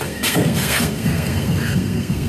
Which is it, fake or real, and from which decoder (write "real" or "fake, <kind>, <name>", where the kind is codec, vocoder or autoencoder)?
fake, codec, SNAC